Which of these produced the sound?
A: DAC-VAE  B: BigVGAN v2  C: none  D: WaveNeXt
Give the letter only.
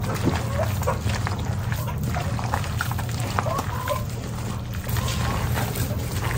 C